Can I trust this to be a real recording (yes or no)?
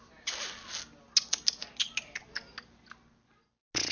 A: yes